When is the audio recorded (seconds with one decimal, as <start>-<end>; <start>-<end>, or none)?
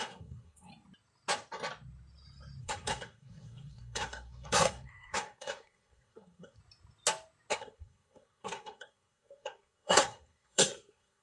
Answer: 0.7-2.6; 6.6-7.5